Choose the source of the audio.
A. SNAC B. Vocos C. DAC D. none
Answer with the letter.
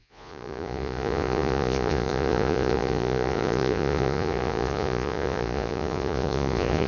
B